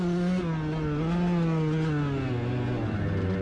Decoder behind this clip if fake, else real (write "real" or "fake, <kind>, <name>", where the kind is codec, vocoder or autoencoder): real